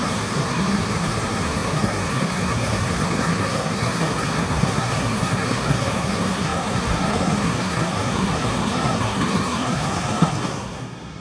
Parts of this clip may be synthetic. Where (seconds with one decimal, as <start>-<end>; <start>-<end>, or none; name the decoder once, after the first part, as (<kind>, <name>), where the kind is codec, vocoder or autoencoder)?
0.0-11.2 (codec, SNAC)